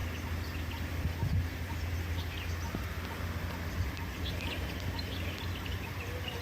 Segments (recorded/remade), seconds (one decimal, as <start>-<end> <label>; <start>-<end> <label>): 0.0-6.4 recorded